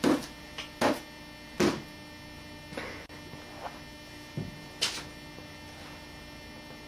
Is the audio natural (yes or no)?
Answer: yes